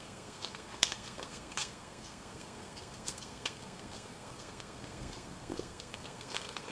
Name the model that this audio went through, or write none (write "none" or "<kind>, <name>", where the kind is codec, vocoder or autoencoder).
codec, SNAC